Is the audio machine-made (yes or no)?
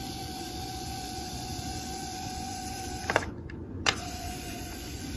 yes